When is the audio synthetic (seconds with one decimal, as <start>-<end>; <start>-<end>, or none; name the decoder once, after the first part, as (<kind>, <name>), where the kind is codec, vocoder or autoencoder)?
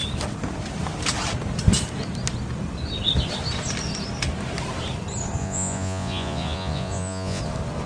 5.4-7.4 (vocoder, Vocos)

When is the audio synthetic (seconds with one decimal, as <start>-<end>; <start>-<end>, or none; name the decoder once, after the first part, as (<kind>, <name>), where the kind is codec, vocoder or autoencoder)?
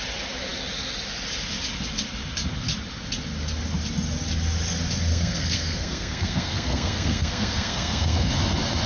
5.1-8.3 (codec, SNAC)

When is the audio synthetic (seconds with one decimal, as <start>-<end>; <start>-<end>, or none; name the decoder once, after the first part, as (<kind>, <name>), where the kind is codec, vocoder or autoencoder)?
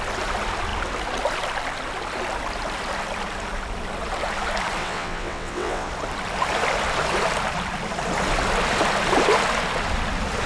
4.8-5.9 (vocoder, WaveNeXt)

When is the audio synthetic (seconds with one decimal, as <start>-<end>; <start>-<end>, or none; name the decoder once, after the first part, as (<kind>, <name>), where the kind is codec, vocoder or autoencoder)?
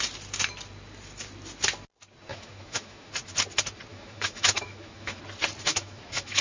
2.3-3.1 (autoencoder, DAC-VAE); 3.9-5.2; 5.7-6.4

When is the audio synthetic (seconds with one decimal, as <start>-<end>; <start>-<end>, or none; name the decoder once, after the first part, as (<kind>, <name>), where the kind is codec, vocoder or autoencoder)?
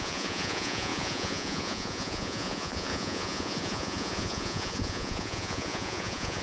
0.0-6.4 (vocoder, Vocos)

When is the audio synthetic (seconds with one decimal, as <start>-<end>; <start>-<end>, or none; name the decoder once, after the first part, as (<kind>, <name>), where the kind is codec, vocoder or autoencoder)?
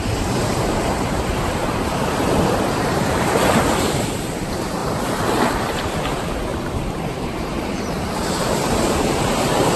0.0-4.8 (vocoder, BigVGAN v2); 5.4-6.5; 7.1-9.8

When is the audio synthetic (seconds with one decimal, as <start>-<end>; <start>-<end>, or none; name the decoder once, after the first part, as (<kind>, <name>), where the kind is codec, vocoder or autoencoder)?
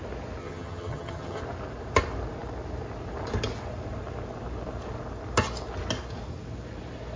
0.4-1.4 (vocoder, HiFi-GAN)